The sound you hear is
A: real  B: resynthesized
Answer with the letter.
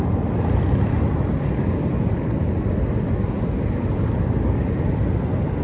A